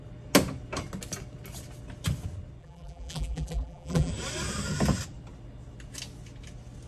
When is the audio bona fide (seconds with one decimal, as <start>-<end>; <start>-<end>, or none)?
0.0-2.6; 4.1-6.9